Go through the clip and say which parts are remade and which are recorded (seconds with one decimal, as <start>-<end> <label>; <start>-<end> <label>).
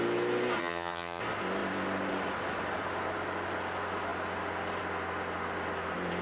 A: 0.0-0.6 recorded; 0.6-1.2 remade; 1.2-6.2 recorded